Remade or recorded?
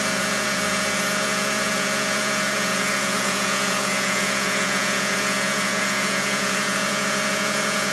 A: remade